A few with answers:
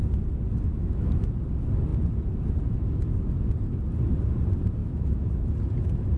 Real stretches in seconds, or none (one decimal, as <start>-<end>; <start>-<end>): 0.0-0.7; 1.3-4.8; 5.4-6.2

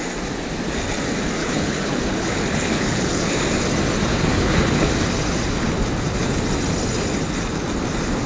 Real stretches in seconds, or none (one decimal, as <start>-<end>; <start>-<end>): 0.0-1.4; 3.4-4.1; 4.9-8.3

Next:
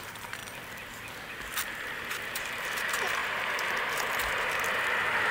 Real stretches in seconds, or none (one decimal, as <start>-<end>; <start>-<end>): 0.4-2.1; 3.2-3.9

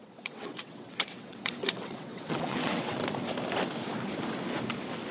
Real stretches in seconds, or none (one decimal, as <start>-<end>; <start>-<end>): 3.0-5.1

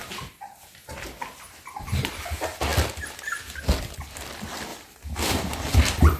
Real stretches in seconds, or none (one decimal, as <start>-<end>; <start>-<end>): 0.0-4.7; 5.3-6.2

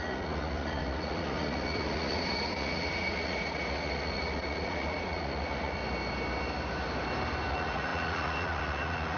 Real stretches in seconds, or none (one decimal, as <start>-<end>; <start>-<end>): 5.8-7.5